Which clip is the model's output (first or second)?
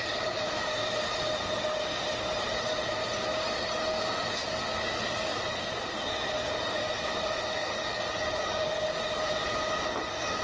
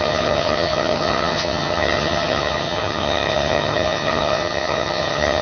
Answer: second